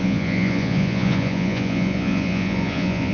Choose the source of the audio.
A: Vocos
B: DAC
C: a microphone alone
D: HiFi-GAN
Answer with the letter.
A